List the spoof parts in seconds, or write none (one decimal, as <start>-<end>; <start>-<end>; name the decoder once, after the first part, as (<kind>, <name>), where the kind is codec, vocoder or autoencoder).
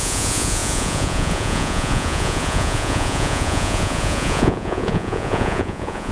0.0-6.1 (vocoder, Vocos)